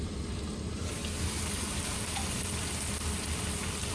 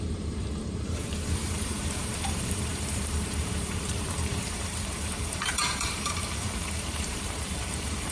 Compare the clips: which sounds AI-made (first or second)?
second